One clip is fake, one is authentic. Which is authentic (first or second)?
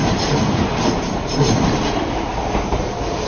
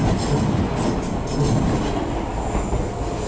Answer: second